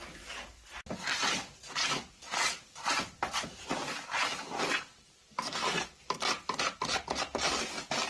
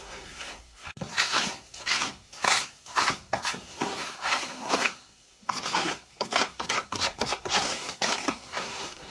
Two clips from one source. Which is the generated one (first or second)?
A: second